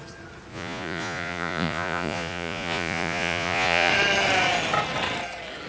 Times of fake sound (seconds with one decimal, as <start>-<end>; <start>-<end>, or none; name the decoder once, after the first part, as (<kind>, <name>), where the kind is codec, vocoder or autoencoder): 0.5-3.9 (vocoder, Vocos)